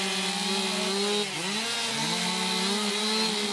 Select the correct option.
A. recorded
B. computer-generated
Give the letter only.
A